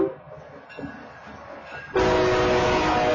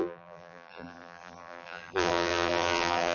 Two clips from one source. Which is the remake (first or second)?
second